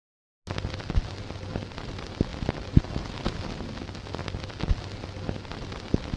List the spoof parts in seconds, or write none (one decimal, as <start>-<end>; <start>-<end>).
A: none